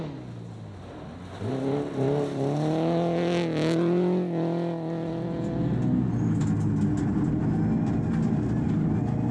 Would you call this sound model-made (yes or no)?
no